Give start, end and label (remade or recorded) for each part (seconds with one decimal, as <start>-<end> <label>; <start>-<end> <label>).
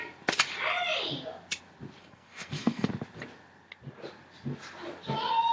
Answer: 0.0-2.0 recorded; 2.0-2.9 remade; 2.9-5.5 recorded